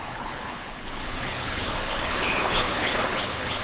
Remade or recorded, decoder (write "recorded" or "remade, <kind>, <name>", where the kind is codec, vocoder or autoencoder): remade, codec, HILCodec